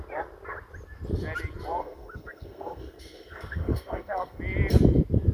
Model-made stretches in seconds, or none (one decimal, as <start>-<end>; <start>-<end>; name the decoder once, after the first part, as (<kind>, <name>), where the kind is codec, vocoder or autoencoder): 1.8-4.4 (codec, SNAC)